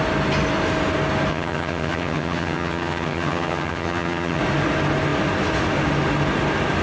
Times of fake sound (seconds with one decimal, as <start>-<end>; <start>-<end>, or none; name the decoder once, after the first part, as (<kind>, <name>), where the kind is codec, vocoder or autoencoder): 1.3-4.4 (vocoder, HiFi-GAN)